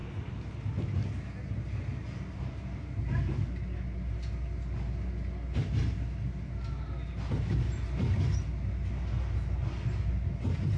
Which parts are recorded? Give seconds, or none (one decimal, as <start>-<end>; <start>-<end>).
0.0-10.8